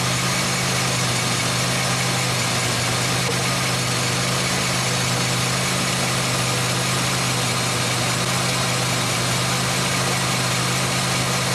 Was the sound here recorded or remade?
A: recorded